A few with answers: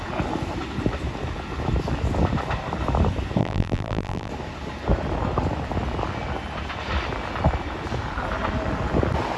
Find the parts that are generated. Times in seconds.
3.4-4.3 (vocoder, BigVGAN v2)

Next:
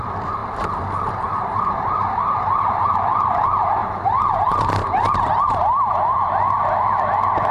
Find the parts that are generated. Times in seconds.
0.4-2.9 (vocoder, BigVGAN v2); 3.8-6.3

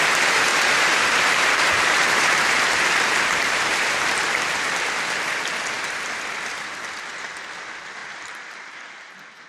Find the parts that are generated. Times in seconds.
0.5-4.2 (vocoder, BigVGAN v2); 8.0-9.1

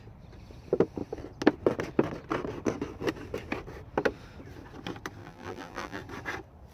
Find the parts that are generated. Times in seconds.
5.2-6.0 (vocoder, BigVGAN v2)

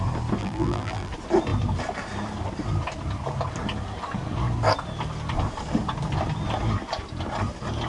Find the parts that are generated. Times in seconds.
0.4-1.1 (vocoder, BigVGAN v2)

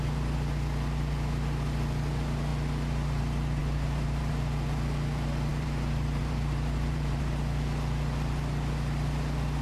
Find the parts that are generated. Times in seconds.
3.6-4.3 (vocoder, BigVGAN v2); 5.5-7.2

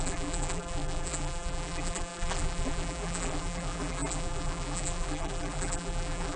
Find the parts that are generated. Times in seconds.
0.0-6.4 (vocoder, BigVGAN v2)